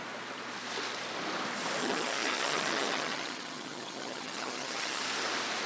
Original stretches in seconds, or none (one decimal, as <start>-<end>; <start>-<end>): 0.0-1.8; 5.0-5.7